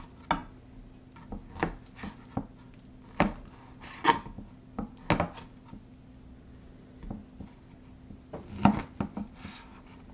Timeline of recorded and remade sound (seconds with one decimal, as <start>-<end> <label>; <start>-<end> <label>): 0.0-10.1 recorded